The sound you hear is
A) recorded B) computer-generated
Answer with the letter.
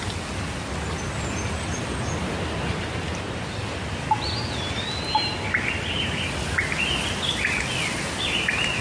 A